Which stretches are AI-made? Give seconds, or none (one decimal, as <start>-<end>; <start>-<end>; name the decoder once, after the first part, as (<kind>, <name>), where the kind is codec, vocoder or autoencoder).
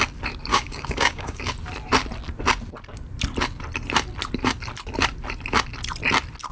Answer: 0.5-1.5 (codec, DAC)